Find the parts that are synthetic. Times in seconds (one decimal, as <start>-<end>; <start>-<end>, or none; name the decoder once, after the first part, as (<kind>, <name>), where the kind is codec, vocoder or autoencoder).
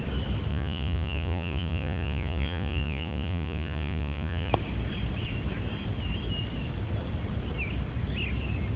0.5-4.5 (vocoder, Vocos)